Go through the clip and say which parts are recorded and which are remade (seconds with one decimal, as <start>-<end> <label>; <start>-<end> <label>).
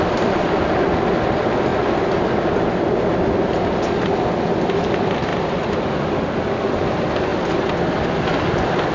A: 0.0-8.9 recorded